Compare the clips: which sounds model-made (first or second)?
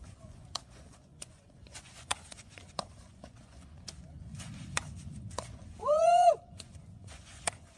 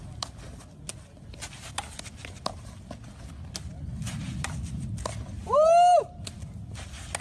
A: first